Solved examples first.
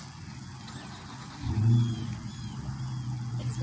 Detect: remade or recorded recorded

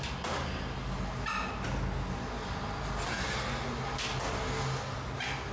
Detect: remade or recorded recorded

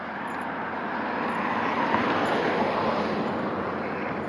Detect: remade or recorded recorded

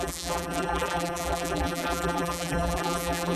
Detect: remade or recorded remade